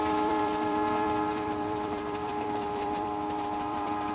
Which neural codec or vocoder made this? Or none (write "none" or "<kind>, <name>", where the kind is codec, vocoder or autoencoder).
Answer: vocoder, BigVGAN v2